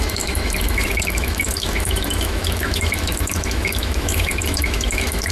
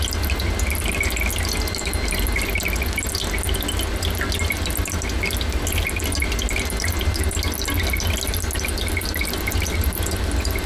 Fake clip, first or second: first